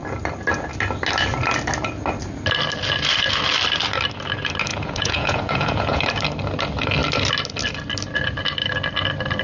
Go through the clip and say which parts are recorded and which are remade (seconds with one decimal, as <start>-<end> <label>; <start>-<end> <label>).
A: 0.0-4.7 recorded; 4.7-6.0 remade; 6.0-9.4 recorded